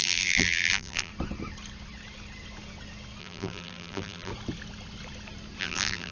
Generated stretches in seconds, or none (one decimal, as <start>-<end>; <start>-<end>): 0.0-1.1; 3.2-4.3; 5.6-6.1